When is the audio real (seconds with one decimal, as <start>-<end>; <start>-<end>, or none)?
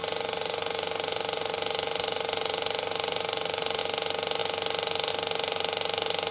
3.8-6.3